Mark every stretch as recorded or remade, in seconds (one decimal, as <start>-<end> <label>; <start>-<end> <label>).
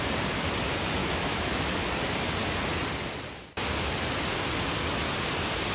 0.0-1.0 recorded; 1.0-1.7 remade; 1.7-5.7 recorded